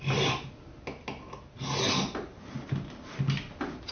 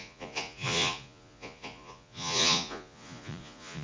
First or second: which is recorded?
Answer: first